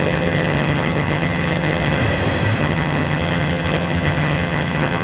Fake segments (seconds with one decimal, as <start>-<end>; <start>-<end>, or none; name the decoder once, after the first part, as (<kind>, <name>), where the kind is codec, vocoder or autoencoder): 0.0-2.0 (vocoder, HiFi-GAN); 2.6-5.0